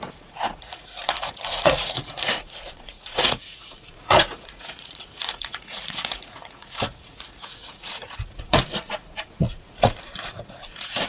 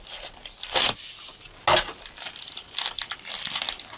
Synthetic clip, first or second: first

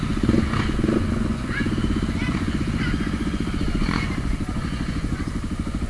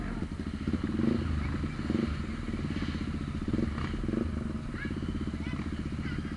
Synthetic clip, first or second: first